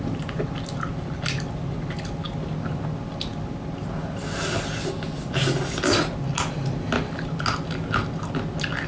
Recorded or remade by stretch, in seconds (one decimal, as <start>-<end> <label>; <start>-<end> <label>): 0.0-8.9 recorded